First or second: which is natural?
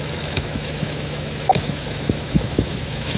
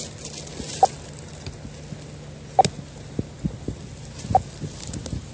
second